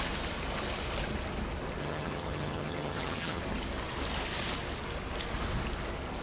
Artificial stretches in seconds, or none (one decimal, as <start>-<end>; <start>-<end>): 1.8-3.4